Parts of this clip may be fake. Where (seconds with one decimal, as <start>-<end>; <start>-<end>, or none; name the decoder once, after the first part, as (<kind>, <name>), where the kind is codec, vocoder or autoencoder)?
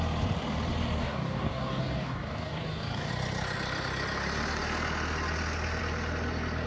1.0-3.1 (codec, DAC)